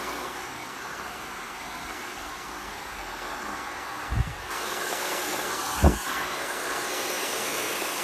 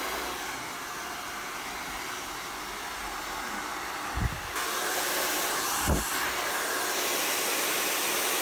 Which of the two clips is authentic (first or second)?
second